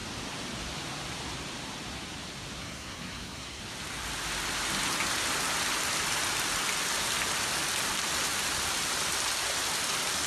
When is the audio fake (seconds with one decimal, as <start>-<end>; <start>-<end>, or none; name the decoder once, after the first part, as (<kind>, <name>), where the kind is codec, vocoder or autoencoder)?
2.6-3.6 (codec, SNAC)